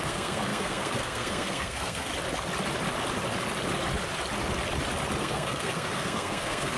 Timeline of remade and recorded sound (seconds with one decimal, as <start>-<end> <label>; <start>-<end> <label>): 0.0-2.1 remade; 2.1-5.2 recorded; 5.2-6.8 remade